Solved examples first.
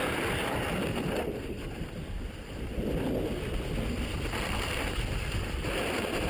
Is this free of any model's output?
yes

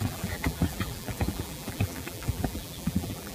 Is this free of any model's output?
no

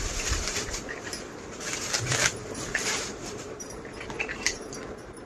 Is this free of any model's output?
no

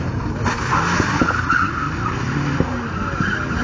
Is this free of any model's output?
yes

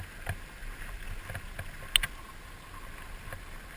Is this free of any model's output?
yes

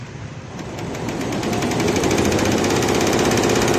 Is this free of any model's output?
no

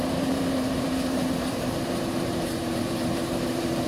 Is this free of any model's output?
no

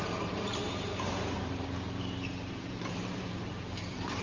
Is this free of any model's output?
no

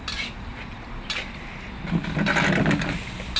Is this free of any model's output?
yes